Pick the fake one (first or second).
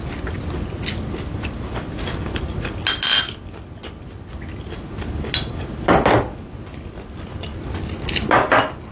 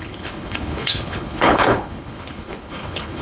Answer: second